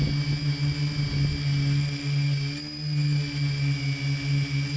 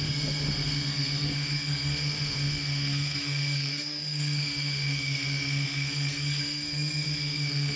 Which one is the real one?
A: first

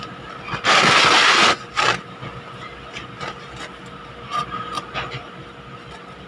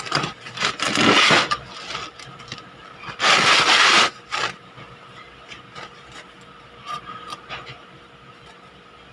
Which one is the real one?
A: first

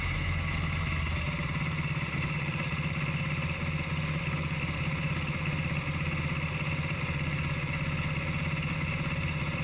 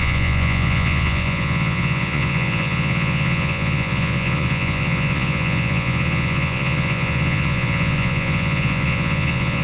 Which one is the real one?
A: first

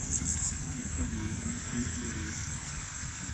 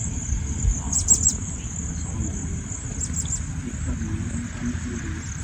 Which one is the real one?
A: second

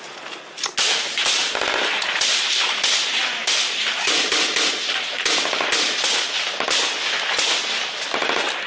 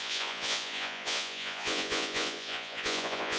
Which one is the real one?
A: first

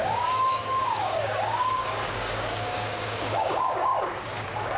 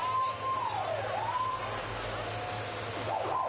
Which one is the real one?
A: second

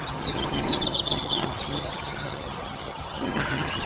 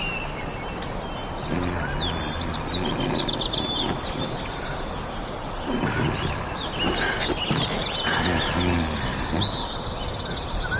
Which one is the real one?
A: second